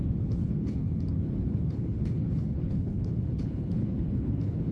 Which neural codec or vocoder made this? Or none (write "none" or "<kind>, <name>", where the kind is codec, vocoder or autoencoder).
codec, HILCodec